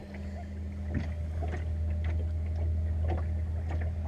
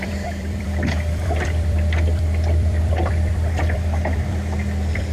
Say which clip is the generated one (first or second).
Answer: second